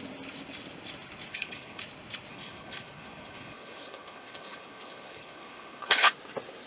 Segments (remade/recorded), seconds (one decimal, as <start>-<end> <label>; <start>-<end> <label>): 0.0-1.3 recorded; 1.3-1.8 remade; 1.8-2.3 recorded; 2.3-6.1 remade; 6.1-6.7 recorded